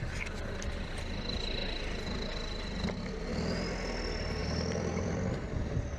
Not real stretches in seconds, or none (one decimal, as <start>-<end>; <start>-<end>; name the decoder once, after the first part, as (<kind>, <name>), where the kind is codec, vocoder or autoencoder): 4.4-6.0 (vocoder, BigVGAN v2)